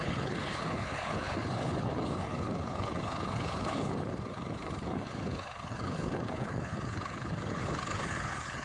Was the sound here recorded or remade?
remade